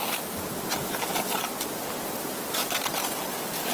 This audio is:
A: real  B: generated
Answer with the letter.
A